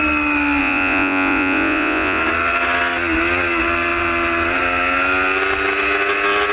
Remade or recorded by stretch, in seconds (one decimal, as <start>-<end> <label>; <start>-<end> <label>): 0.0-0.6 recorded; 0.6-2.2 remade; 2.2-6.5 recorded